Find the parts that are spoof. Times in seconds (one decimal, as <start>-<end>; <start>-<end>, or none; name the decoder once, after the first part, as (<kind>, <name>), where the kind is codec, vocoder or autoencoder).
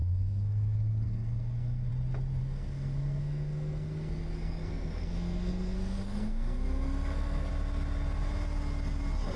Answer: 0.0-1.9 (codec, SNAC); 2.4-7.5